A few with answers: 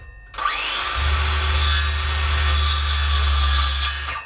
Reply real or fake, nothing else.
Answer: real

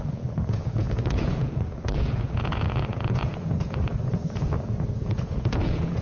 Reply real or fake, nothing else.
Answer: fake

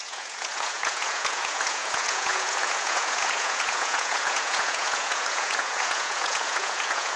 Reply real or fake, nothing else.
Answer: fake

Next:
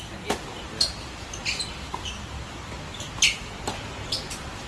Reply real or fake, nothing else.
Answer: real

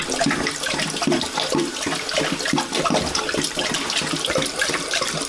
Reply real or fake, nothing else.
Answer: real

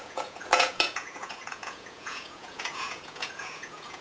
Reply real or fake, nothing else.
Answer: fake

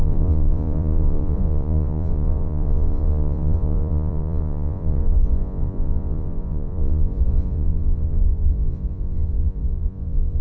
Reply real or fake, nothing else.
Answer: fake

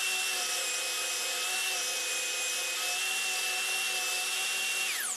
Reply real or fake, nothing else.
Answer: real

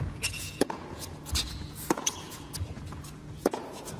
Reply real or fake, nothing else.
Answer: fake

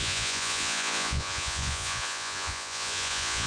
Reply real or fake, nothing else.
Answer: fake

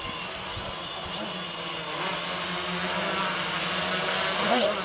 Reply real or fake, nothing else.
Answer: real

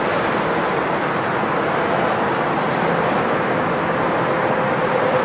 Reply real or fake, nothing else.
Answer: real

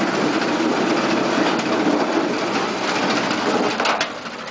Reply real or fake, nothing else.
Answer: real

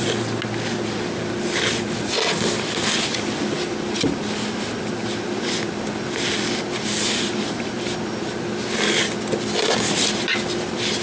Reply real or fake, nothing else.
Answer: real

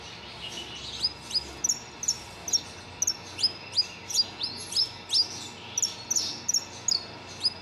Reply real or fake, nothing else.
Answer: real